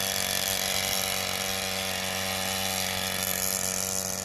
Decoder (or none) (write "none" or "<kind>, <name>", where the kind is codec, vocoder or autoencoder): none